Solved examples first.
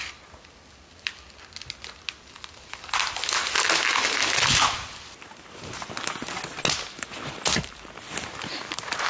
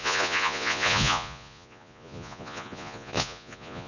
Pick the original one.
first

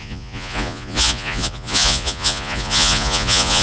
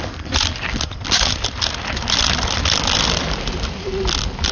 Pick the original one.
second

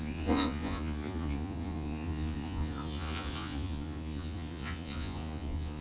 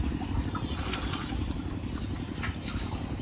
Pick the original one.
second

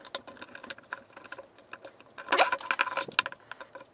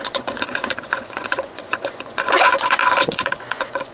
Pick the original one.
first